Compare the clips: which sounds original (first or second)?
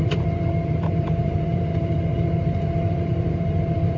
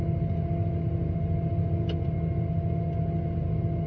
second